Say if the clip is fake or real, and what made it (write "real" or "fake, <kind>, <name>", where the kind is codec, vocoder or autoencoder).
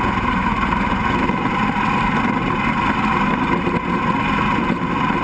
fake, vocoder, BigVGAN v2